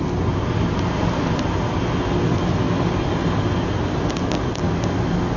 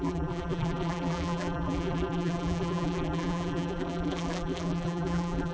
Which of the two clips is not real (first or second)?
second